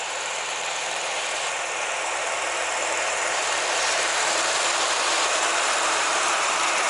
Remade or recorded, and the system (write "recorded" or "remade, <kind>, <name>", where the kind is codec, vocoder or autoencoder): remade, vocoder, BigVGAN v2